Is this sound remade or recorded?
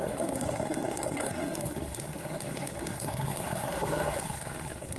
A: remade